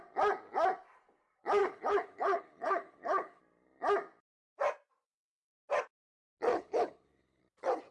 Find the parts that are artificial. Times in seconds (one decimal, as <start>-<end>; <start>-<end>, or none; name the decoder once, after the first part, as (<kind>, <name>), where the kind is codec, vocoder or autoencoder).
1.6-3.4 (codec, HILCodec); 6.5-7.4